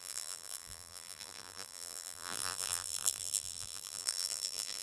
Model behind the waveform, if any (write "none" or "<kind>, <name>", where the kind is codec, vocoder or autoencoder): vocoder, BigVGAN v2